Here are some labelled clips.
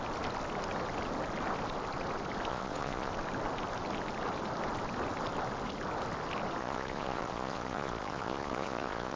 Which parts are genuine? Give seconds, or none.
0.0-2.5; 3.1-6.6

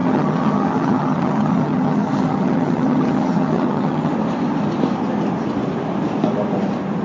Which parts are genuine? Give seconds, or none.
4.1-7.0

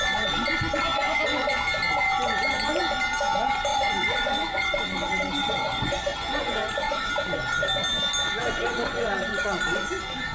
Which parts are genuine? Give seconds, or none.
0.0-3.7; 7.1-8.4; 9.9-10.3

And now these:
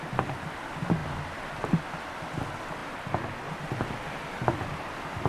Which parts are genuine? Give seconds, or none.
0.0-5.3

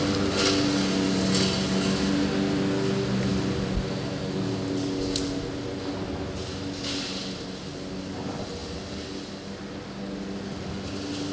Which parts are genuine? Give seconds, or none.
0.0-11.3

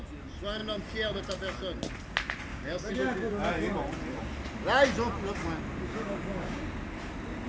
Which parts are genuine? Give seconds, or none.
0.0-2.5; 3.3-5.9; 6.6-7.5

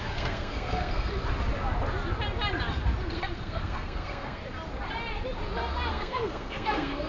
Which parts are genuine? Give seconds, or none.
1.1-3.0; 4.4-5.9

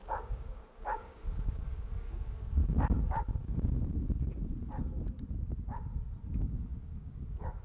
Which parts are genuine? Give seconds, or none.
2.6-6.3